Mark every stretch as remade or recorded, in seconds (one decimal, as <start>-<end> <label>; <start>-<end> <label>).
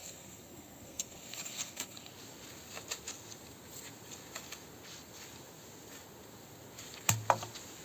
0.0-2.1 remade; 2.1-7.8 recorded